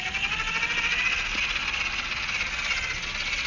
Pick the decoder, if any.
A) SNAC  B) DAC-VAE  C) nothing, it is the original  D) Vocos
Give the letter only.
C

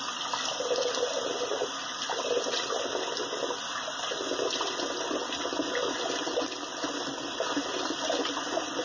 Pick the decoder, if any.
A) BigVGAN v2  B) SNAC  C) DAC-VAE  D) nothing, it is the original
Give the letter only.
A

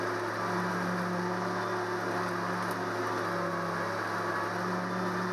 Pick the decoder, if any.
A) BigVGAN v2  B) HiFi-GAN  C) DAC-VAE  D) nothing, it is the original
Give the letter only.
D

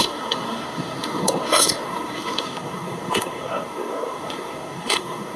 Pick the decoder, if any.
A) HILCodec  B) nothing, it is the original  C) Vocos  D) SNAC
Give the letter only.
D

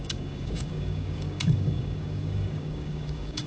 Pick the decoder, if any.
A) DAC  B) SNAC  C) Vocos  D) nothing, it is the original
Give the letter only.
A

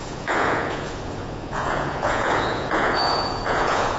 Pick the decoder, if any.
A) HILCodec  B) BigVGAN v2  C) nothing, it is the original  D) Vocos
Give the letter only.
D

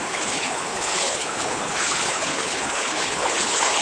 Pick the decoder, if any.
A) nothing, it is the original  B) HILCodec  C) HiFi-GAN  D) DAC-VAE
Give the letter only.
B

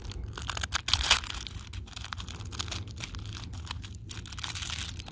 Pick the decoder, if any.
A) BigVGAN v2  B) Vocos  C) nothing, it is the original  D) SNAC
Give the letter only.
C